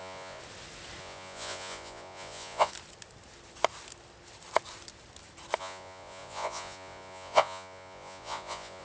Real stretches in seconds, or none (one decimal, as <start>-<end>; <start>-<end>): 0.4-1.0; 2.7-5.6